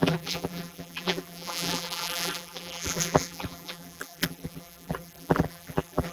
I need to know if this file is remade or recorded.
remade